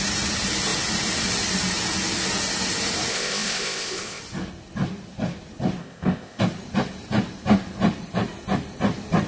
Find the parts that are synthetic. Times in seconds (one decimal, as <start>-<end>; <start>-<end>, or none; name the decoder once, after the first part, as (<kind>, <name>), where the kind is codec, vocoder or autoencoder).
3.1-4.2 (codec, ZipCodec); 5.8-6.4